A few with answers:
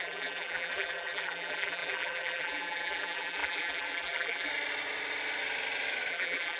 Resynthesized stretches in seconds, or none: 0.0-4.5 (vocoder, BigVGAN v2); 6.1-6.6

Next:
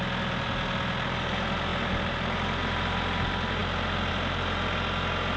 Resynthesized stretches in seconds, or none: none

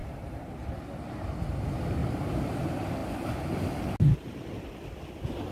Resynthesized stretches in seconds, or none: 0.0-0.6 (vocoder, BigVGAN v2); 2.0-2.6

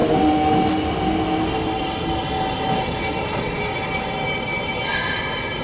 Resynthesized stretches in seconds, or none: none

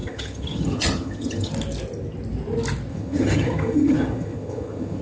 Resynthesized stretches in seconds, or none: 0.0-1.5 (vocoder, HiFi-GAN); 2.9-5.0

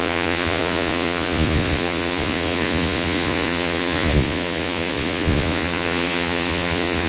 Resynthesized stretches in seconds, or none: 0.0-7.1 (vocoder, Vocos)